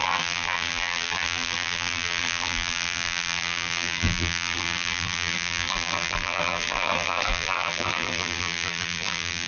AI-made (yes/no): yes